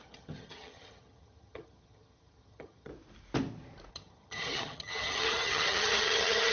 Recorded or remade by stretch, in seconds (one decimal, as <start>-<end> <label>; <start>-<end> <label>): 0.0-2.9 remade; 2.9-3.9 recorded; 3.9-6.5 remade

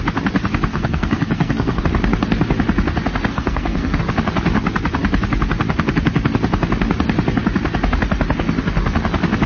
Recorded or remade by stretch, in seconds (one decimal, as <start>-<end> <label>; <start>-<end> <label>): 0.0-0.7 recorded; 0.7-1.8 remade; 1.8-3.3 recorded; 3.3-4.0 remade; 4.0-9.5 recorded

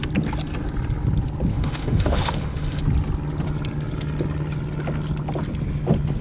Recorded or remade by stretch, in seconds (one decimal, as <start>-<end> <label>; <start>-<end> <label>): 0.0-1.5 recorded; 1.5-2.8 remade; 2.8-6.2 recorded

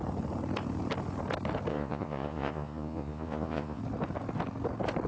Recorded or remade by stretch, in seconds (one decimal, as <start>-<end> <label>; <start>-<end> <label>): 0.0-1.7 recorded; 1.7-3.8 remade; 3.8-5.1 recorded

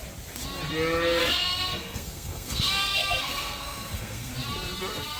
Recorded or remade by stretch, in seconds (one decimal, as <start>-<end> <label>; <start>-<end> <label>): 0.0-1.2 recorded; 1.2-4.3 remade; 4.3-5.2 recorded